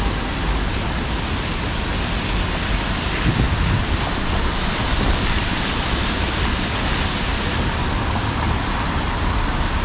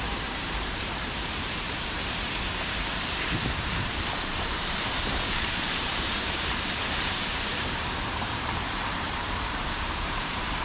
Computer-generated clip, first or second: second